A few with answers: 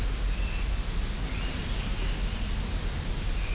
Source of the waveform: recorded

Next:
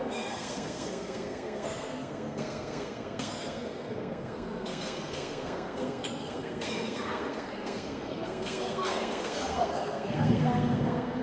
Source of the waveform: remade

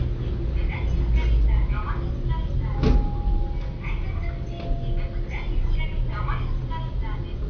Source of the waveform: recorded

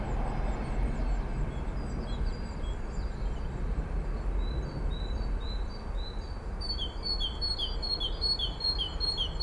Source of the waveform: recorded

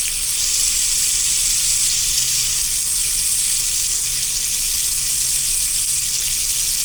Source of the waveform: recorded